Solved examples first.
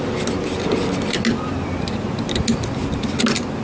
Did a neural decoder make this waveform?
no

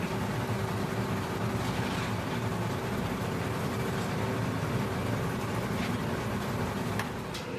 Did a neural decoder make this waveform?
no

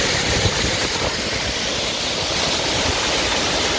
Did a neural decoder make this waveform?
no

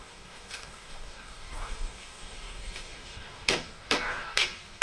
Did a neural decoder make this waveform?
yes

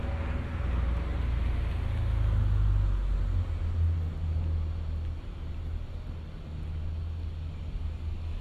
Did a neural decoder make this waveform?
no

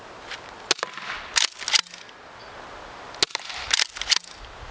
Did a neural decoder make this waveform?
no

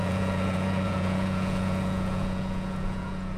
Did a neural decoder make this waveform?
yes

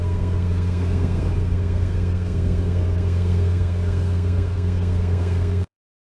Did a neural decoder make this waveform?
yes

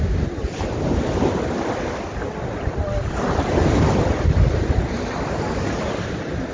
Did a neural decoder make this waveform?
no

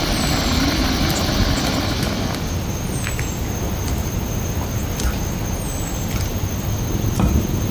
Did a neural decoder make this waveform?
no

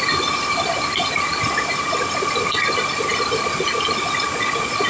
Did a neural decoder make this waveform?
no